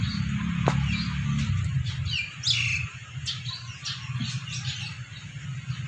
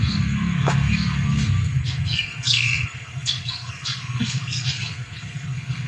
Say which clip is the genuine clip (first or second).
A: first